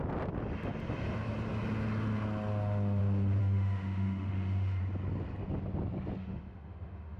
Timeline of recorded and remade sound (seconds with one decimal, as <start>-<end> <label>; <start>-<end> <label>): 0.0-3.4 recorded; 3.4-4.8 remade; 4.8-6.2 recorded; 6.2-7.2 remade